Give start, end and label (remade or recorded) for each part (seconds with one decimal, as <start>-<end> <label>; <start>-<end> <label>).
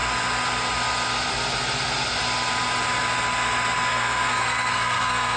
0.0-3.9 recorded; 3.9-5.4 remade